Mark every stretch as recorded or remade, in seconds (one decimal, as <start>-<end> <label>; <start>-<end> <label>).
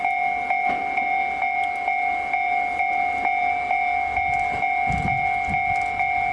0.0-6.3 recorded